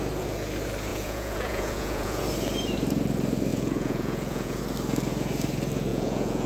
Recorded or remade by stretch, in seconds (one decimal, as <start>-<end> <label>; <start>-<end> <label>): 0.0-0.9 recorded; 0.9-2.2 remade; 2.2-3.5 recorded; 3.5-4.6 remade; 4.6-5.9 recorded; 5.9-6.5 remade